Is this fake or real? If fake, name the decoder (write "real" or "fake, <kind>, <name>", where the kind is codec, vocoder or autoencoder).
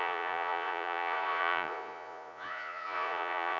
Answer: fake, vocoder, Vocos